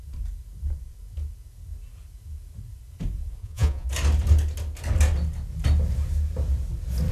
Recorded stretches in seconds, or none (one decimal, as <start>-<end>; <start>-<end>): 0.0-3.4; 3.9-7.1